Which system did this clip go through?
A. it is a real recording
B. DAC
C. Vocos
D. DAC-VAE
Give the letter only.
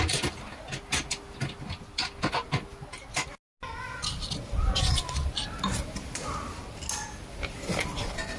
A